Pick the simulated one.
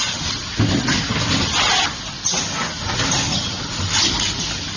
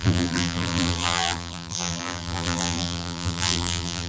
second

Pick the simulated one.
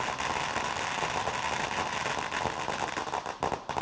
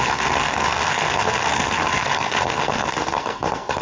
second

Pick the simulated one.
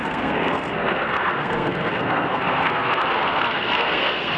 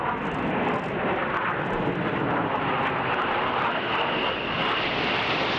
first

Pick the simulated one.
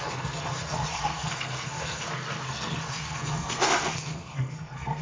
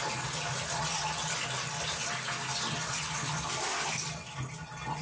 first